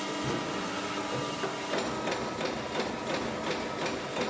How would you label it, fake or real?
real